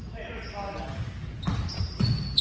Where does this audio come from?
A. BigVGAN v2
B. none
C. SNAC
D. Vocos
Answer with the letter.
B